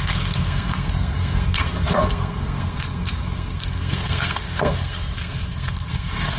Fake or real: fake